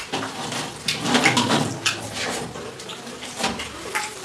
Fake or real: fake